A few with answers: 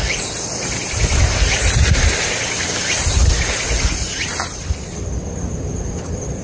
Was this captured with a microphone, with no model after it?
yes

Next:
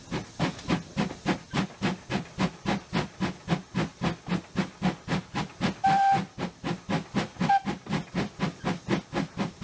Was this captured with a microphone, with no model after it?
yes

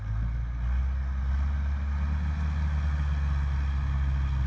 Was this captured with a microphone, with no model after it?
yes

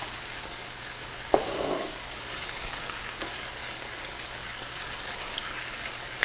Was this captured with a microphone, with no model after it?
no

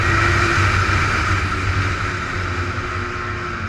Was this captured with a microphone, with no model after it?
yes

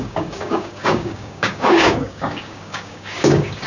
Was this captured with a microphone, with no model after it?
no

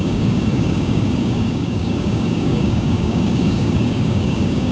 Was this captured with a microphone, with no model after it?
no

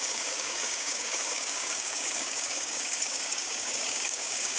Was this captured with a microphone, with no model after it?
no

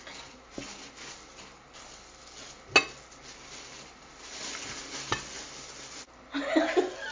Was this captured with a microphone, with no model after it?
yes